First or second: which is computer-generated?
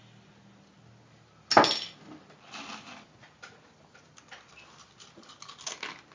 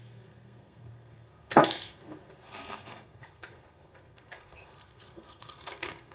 second